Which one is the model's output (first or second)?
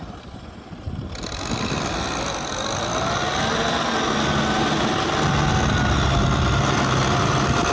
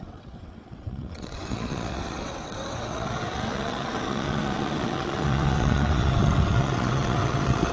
second